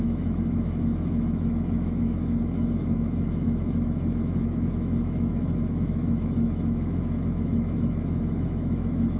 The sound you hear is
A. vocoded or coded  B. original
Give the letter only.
A